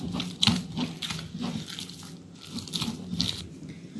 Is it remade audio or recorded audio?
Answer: recorded